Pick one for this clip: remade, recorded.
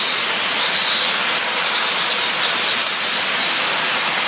recorded